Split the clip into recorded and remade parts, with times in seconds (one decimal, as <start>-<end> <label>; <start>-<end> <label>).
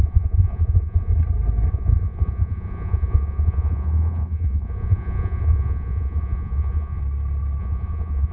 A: 0.0-1.1 remade; 1.1-1.7 recorded; 1.7-7.0 remade; 7.0-7.6 recorded; 7.6-8.3 remade